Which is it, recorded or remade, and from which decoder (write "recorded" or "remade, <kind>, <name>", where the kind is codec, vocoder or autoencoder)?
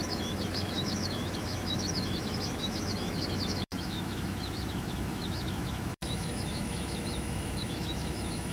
remade, autoencoder, DAC-VAE